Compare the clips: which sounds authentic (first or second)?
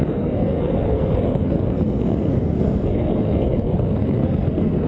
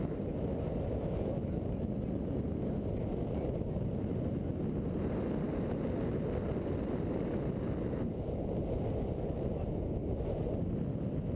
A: second